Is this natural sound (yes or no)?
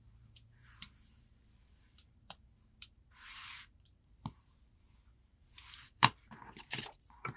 no